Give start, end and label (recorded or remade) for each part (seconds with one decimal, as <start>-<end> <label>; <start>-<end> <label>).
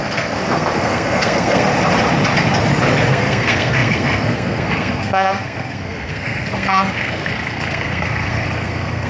0.0-1.7 remade; 1.7-3.1 recorded; 3.1-9.1 remade